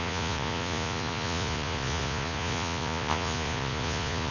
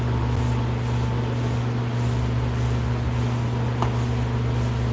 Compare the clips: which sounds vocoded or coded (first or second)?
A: first